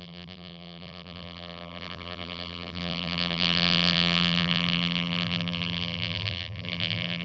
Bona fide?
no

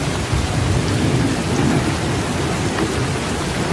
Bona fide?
yes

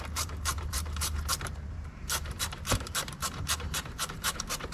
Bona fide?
no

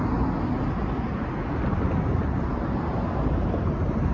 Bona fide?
yes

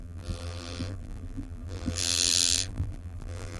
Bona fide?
no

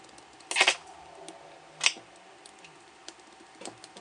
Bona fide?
yes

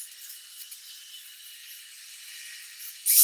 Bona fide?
yes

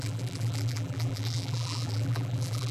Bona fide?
no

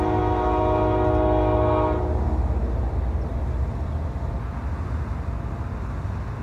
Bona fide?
yes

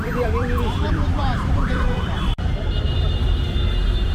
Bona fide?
no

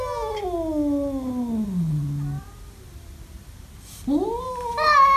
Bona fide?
yes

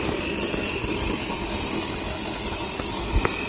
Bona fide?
yes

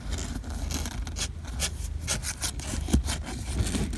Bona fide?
yes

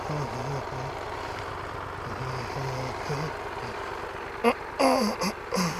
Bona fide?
yes